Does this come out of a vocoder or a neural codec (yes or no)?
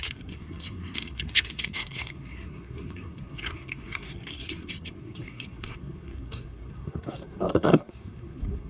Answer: yes